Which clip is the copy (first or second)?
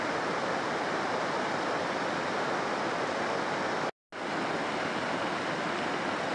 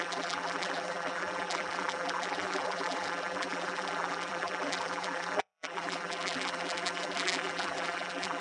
second